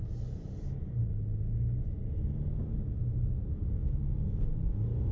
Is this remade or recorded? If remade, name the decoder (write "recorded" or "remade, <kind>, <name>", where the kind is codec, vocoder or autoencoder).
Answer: recorded